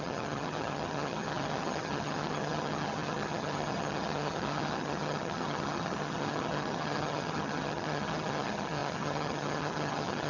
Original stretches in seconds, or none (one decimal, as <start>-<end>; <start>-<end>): none